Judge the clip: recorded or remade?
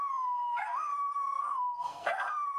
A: remade